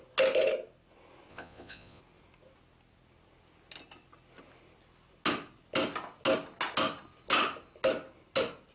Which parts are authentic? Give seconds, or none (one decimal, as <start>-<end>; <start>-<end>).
0.0-1.3; 2.0-8.7